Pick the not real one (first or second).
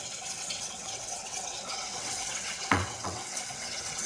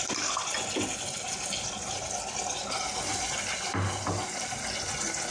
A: first